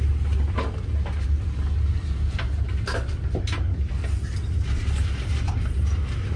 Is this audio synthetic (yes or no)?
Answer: no